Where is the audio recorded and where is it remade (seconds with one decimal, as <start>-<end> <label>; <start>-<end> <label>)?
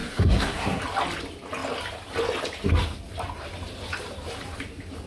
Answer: 0.0-0.8 remade; 0.8-5.1 recorded